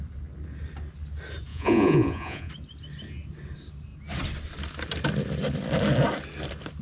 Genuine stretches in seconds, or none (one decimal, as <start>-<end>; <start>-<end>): 0.0-1.5; 2.5-6.8